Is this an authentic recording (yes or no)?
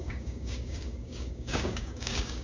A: no